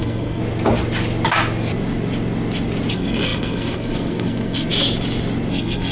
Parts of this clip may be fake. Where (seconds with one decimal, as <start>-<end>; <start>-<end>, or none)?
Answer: 0.0-0.4; 2.9-4.7; 5.5-5.9